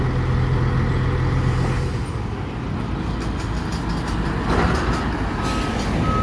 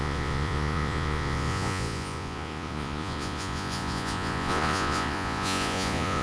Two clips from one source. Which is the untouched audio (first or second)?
first